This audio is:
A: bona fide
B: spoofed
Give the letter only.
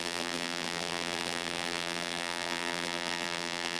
B